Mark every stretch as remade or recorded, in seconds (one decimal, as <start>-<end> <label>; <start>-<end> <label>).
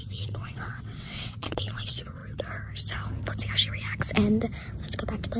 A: 0.0-2.2 remade; 2.2-5.4 recorded